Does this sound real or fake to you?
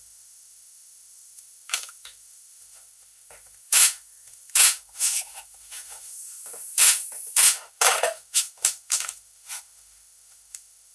fake